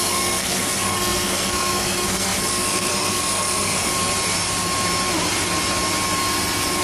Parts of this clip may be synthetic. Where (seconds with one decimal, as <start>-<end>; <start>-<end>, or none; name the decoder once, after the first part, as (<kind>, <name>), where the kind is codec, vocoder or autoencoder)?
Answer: 0.0-3.9 (codec, SNAC)

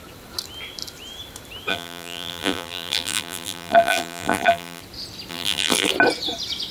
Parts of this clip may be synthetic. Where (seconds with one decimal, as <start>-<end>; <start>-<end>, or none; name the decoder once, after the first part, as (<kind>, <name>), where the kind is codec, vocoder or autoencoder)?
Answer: 1.7-4.8 (vocoder, BigVGAN v2); 5.3-5.9

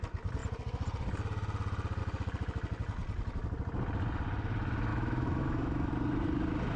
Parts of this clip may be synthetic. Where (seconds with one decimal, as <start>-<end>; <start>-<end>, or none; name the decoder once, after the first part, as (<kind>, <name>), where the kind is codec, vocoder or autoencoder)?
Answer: 4.9-5.9 (autoencoder, DAC-VAE)

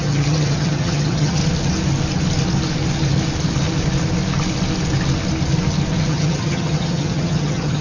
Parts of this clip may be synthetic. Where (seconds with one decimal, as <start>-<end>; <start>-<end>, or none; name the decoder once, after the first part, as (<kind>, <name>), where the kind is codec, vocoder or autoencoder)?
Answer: 0.0-1.4 (vocoder, HiFi-GAN); 6.1-7.8